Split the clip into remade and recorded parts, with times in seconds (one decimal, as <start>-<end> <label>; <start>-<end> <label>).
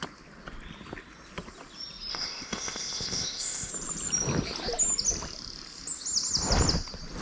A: 0.0-2.1 recorded; 2.1-3.7 remade; 3.7-7.2 recorded